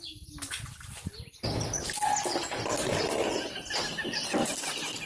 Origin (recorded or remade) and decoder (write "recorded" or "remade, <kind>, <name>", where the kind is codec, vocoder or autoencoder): recorded